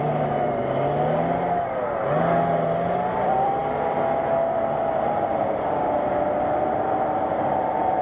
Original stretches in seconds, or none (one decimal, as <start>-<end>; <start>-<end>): 0.6-3.1; 3.6-5.3